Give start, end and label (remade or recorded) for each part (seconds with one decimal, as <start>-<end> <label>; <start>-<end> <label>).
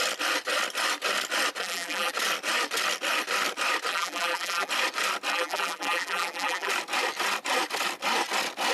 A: 0.0-1.6 recorded; 1.6-2.1 remade; 2.1-3.9 recorded; 3.9-4.7 remade; 4.7-5.3 recorded; 5.3-6.7 remade; 6.7-8.7 recorded